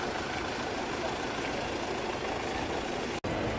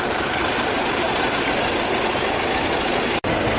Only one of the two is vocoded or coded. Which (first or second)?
second